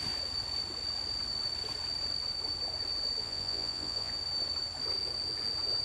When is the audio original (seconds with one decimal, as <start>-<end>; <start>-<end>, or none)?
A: 0.0-3.2; 4.1-5.8